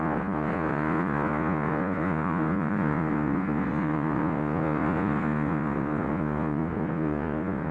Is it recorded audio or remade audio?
remade